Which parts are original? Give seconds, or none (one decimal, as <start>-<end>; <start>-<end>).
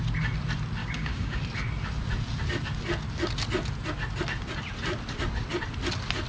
0.0-0.8; 1.4-6.3